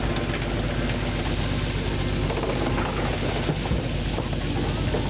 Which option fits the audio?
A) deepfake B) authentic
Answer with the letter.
B